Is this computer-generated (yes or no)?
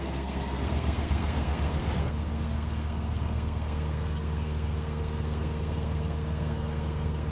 yes